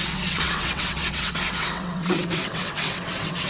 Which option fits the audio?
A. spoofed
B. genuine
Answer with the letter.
A